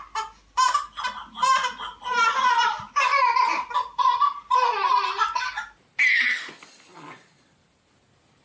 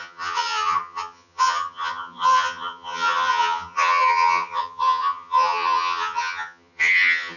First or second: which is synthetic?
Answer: second